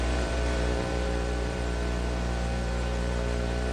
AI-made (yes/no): yes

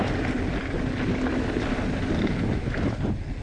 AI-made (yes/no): no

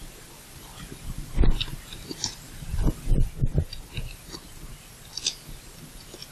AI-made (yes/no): no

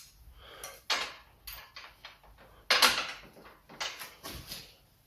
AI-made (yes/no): no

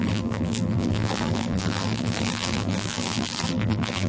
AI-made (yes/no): yes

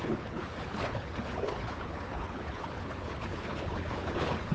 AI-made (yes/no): yes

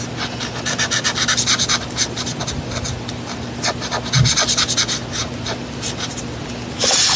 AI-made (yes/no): no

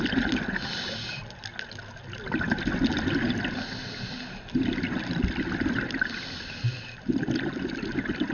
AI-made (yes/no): no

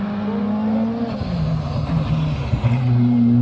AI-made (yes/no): no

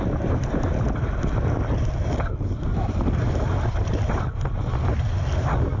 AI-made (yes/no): no